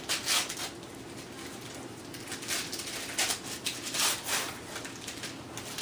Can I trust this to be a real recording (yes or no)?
yes